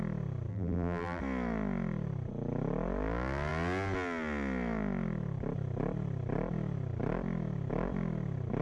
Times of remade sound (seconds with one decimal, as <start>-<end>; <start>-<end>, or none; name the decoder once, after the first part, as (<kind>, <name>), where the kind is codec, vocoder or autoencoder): 0.5-1.2 (vocoder, BigVGAN v2)